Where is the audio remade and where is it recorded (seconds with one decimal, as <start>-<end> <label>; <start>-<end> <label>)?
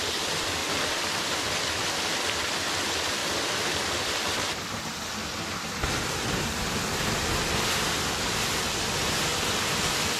0.0-0.6 recorded; 0.6-2.5 remade; 2.5-10.2 recorded